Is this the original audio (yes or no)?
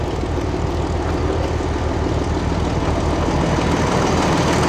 yes